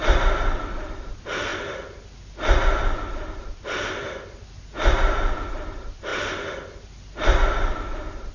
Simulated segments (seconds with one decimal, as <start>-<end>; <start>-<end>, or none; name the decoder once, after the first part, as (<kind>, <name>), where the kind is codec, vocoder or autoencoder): none